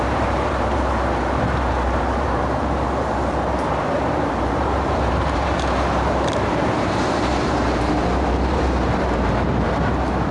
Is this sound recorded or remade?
remade